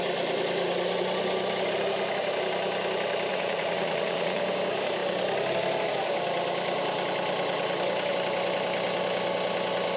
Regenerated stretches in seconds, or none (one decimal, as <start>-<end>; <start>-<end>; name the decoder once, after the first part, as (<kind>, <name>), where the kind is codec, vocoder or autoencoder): 3.3-4.4 (vocoder, Vocos)